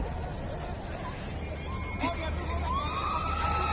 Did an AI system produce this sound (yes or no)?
no